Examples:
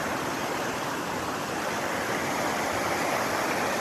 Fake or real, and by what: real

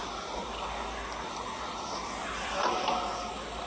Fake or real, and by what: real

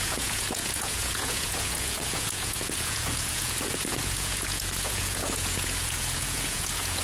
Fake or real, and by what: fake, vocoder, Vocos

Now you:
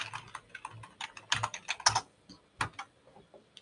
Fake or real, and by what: real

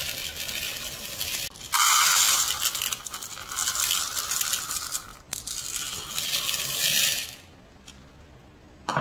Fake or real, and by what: real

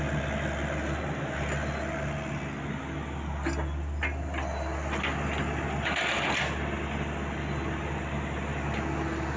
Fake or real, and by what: real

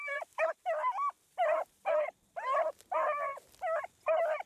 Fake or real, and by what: real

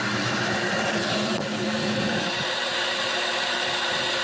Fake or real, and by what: fake, vocoder, BigVGAN v2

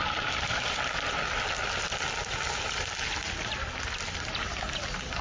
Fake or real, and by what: real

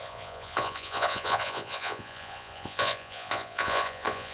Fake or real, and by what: fake, vocoder, Vocos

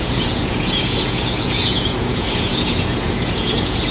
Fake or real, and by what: fake, vocoder, Vocos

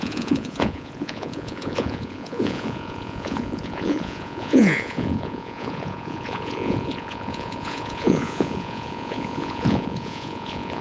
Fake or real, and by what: fake, vocoder, Vocos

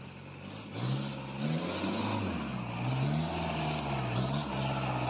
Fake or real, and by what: real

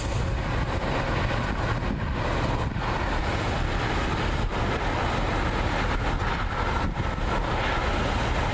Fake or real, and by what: real